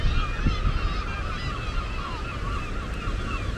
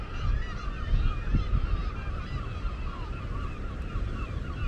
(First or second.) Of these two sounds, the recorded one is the first